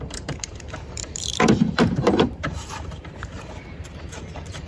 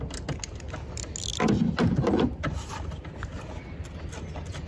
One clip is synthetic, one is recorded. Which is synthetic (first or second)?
first